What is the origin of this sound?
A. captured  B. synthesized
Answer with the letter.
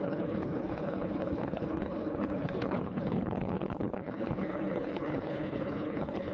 B